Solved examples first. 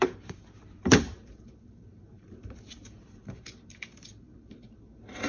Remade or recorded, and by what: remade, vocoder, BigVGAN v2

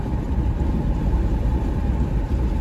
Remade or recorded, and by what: remade, vocoder, BigVGAN v2